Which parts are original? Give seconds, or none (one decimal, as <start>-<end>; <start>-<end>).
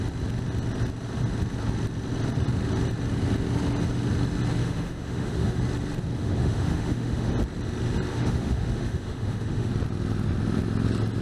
0.0-4.6; 5.6-6.2; 7.3-8.1; 9.7-11.2